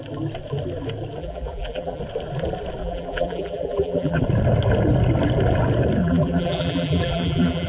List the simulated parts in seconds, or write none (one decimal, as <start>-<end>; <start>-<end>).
1.2-2.0; 2.8-4.2; 6.0-7.7